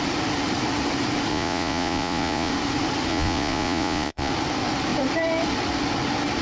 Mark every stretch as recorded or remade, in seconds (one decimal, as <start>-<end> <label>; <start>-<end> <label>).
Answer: 0.0-1.3 recorded; 1.3-2.5 remade; 2.5-3.1 recorded; 3.1-4.3 remade; 4.3-6.4 recorded